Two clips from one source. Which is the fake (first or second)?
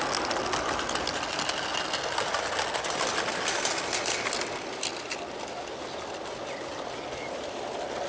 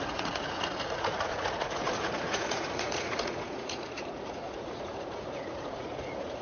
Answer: second